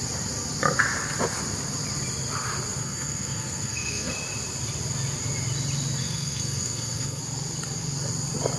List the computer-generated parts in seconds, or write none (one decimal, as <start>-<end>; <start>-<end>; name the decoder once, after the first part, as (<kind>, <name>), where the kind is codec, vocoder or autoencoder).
2.8-4.1 (codec, SNAC); 6.0-7.2